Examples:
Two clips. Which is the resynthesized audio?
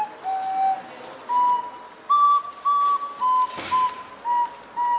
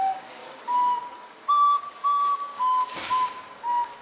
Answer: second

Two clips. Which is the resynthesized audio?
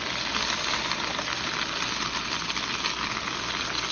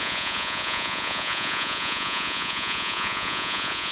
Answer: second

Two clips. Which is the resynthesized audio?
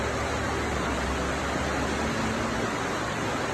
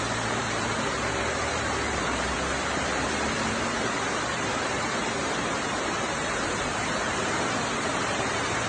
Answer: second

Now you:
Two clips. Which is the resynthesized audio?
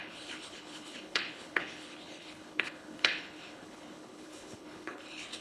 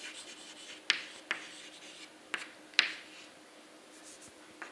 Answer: first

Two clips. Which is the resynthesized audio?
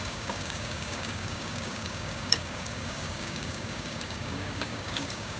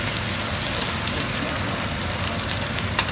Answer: first